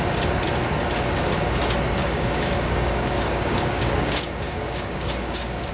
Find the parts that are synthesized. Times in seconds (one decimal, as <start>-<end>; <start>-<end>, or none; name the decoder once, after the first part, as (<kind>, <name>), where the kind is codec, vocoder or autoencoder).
2.0-5.7 (codec, DAC)